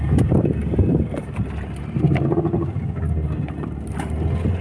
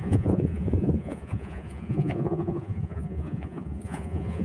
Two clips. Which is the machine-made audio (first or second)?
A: second